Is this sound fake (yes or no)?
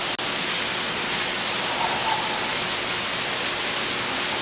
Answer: no